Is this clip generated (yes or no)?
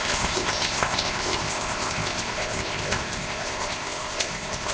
yes